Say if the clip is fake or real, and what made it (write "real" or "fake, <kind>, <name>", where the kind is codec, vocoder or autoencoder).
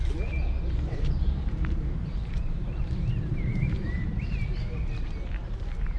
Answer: fake, vocoder, BigVGAN v2